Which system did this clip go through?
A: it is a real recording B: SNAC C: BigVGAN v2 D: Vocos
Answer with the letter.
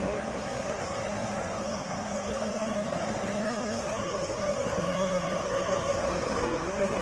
B